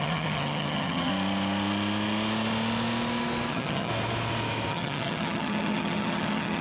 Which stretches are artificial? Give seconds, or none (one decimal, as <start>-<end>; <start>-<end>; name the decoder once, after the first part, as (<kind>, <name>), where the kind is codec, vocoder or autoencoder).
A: 0.0-1.1 (vocoder, HiFi-GAN); 3.5-3.9; 4.7-6.6